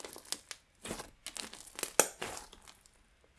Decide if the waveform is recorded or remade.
recorded